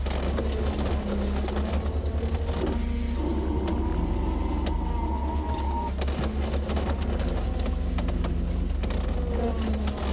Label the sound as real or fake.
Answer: real